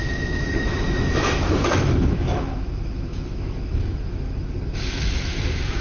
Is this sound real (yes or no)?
no